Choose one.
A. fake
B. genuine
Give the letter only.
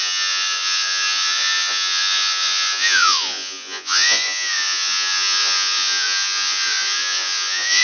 A